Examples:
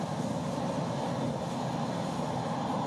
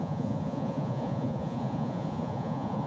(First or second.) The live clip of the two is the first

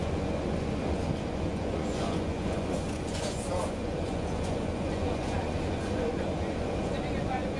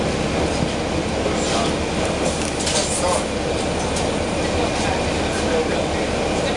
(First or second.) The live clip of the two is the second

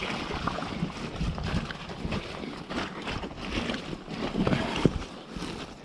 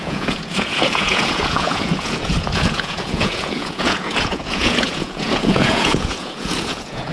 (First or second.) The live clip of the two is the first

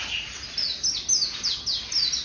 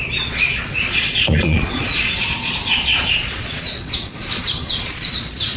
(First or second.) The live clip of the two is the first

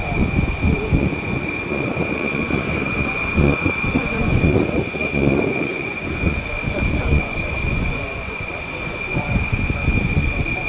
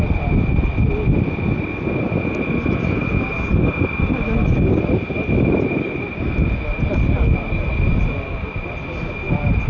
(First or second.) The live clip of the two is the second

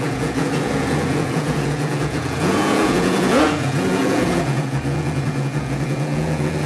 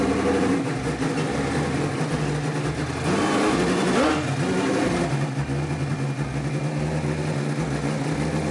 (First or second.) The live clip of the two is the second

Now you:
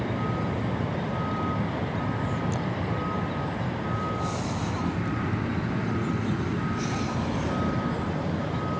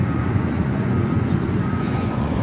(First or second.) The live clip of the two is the first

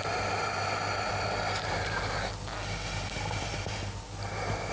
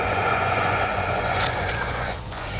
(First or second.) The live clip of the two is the first